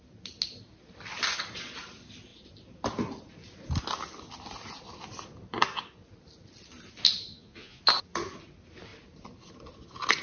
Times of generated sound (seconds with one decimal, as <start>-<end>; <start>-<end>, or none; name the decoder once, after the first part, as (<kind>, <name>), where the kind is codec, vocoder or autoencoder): 7.3-7.8 (vocoder, Vocos)